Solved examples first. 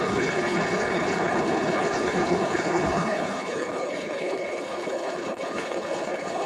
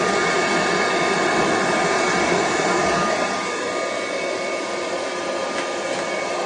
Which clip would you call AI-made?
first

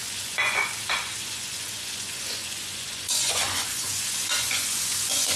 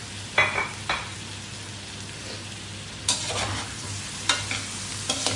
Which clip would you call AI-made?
first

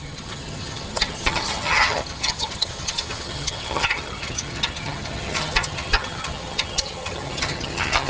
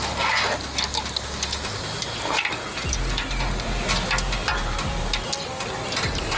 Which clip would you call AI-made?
first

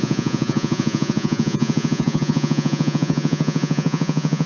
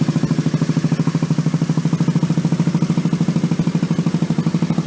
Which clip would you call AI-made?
first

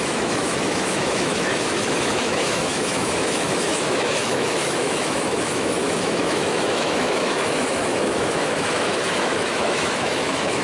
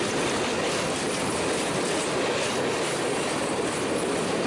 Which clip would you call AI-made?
first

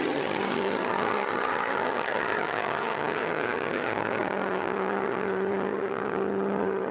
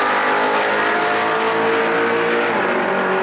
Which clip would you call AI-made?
first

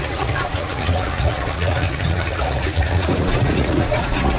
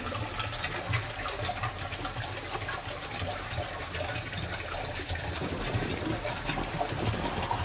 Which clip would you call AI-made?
first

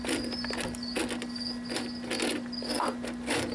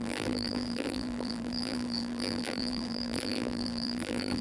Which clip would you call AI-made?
second